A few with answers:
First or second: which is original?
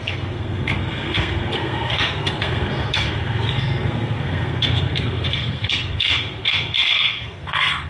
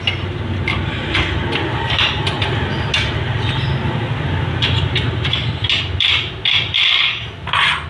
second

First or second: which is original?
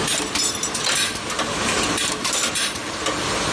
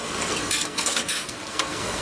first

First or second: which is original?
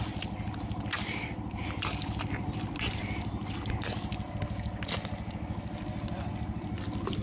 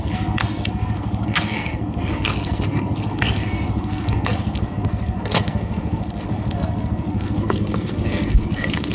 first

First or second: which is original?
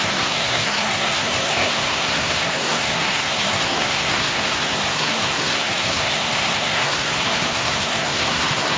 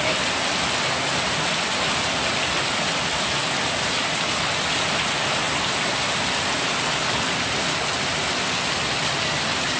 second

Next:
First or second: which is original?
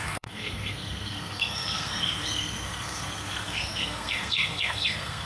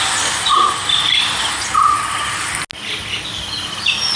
second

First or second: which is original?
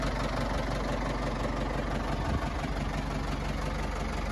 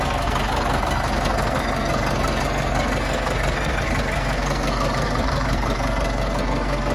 first